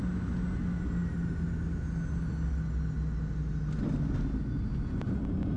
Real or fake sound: real